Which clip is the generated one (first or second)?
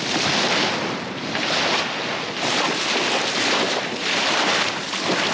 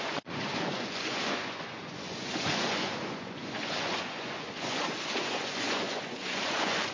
second